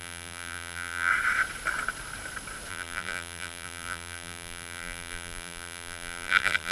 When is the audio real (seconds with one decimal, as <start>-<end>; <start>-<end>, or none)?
1.1-2.7